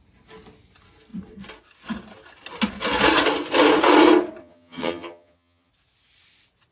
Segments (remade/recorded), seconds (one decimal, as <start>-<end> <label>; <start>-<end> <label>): 0.0-4.4 recorded; 4.4-5.7 remade; 5.7-6.7 recorded